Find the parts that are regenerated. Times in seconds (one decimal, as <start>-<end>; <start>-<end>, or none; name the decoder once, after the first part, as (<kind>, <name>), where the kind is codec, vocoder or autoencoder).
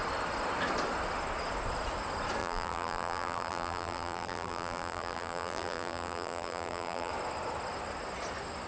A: 2.4-7.1 (vocoder, BigVGAN v2)